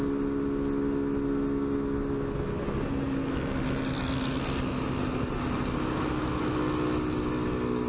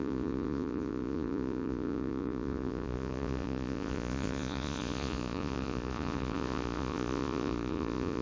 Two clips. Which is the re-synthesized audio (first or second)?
second